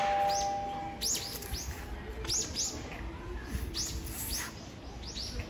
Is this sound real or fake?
real